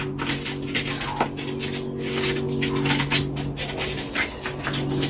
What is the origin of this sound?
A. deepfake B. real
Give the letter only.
B